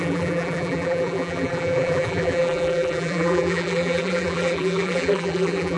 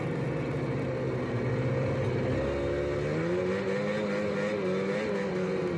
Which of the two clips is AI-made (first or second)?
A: first